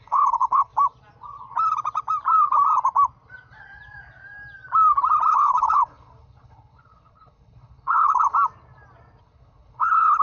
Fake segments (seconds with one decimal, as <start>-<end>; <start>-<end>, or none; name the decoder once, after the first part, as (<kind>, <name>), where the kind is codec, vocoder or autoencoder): 0.0-0.7 (codec, HILCodec); 5.3-8.3; 9.2-10.2